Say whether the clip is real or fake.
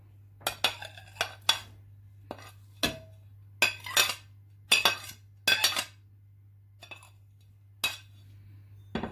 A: real